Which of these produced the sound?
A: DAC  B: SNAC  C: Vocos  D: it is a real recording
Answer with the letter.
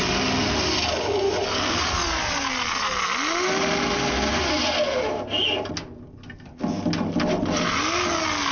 D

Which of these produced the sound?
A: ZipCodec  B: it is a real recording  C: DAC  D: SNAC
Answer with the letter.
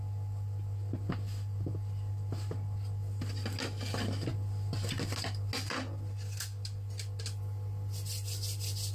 B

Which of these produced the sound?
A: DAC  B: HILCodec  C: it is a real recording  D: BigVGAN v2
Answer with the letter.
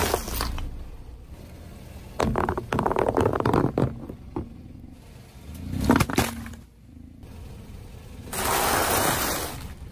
C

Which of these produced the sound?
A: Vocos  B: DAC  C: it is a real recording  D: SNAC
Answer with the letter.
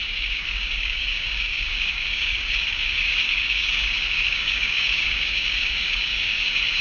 B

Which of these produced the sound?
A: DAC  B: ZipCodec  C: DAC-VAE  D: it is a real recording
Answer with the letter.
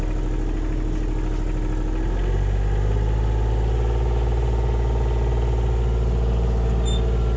D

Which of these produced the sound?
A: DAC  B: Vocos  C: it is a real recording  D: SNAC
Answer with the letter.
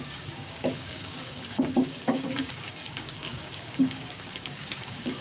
A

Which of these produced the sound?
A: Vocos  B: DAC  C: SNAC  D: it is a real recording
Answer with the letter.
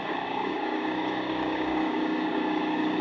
B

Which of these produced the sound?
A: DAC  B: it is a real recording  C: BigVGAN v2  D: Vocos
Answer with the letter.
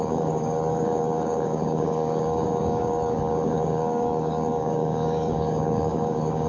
A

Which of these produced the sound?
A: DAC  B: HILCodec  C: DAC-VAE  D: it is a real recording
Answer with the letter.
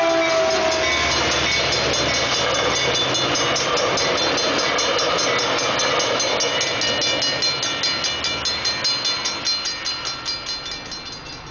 D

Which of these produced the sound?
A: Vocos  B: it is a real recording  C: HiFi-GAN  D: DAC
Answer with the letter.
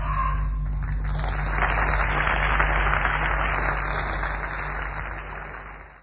B